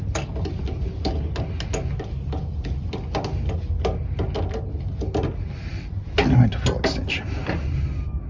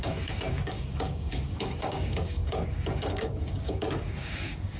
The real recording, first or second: first